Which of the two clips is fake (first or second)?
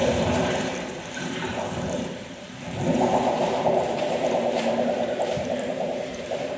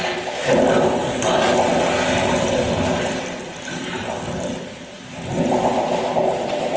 first